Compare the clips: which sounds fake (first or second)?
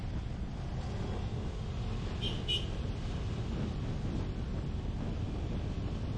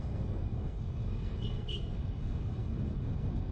second